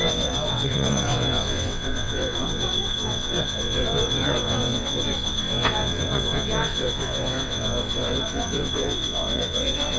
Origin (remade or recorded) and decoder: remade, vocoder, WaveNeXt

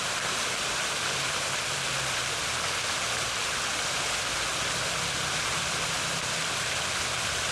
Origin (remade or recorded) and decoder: recorded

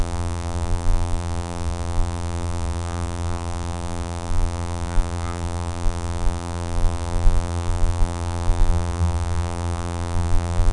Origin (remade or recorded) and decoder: remade, vocoder, BigVGAN v2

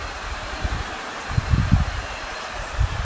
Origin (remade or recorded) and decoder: remade, vocoder, BigVGAN v2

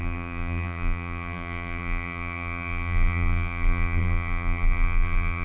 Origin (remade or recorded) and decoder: remade, vocoder, BigVGAN v2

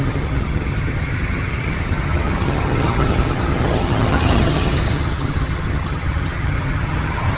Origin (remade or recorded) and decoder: remade, vocoder, HiFi-GAN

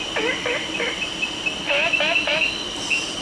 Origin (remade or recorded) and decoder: recorded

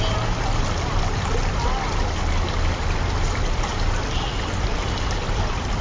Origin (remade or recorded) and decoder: recorded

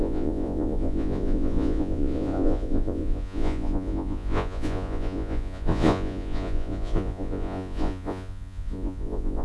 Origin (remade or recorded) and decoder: remade, vocoder, Vocos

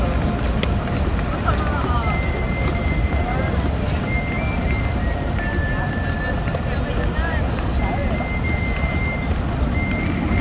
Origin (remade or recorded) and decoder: recorded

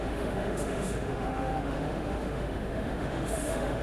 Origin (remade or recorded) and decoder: remade, autoencoder, DAC-VAE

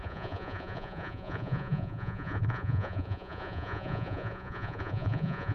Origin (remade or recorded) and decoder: remade, vocoder, Vocos